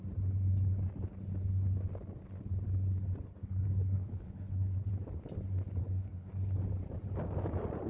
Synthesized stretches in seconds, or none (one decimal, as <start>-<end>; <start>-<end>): 3.4-4.9; 5.8-6.3